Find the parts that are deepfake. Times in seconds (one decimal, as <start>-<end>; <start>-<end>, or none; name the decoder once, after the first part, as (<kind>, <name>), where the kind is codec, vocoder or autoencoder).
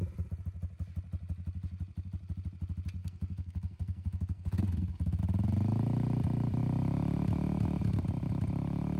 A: 3.0-5.2 (codec, SNAC)